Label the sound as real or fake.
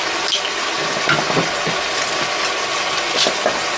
real